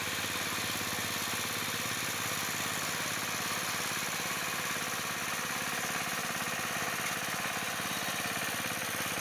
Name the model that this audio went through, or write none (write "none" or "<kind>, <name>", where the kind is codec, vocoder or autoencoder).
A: none